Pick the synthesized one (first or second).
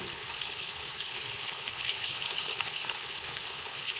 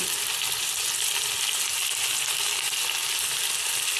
first